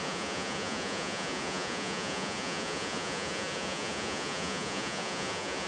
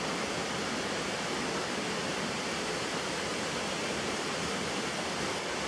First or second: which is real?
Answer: second